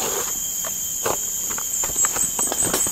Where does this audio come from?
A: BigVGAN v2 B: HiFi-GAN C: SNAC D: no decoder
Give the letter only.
D